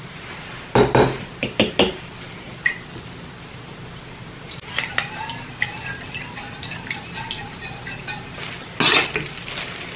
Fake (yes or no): no